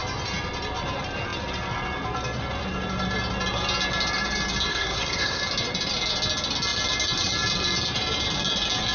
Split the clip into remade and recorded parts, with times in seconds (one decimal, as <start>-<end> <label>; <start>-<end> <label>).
0.0-4.7 recorded; 4.7-5.4 remade; 5.4-8.9 recorded